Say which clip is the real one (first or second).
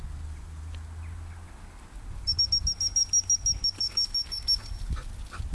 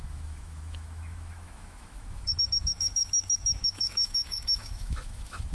first